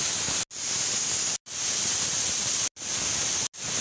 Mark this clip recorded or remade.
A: recorded